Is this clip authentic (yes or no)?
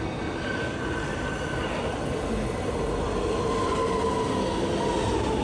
yes